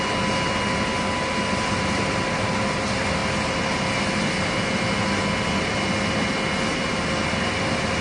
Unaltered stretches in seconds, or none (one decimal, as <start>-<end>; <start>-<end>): 0.0-8.0